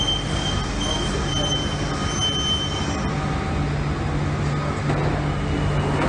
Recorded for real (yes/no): yes